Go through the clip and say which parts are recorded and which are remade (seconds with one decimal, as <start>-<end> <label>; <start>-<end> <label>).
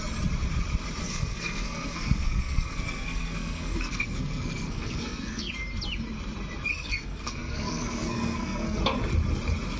0.0-1.0 recorded; 1.0-5.5 remade; 5.5-6.7 recorded; 6.7-8.8 remade; 8.8-9.8 recorded